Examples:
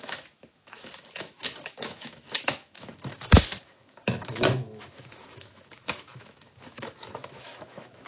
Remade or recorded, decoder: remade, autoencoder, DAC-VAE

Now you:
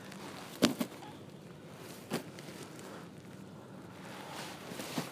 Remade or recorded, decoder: recorded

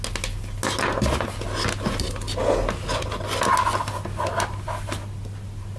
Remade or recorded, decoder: recorded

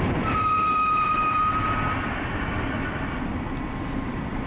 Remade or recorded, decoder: recorded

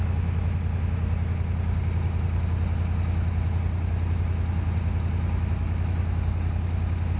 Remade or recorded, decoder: recorded